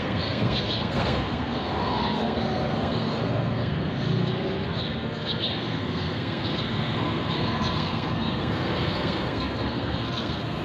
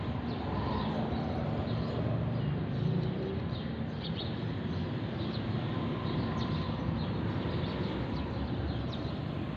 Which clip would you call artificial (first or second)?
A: first